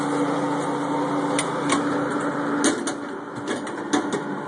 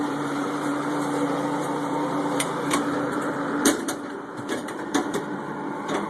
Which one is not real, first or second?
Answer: second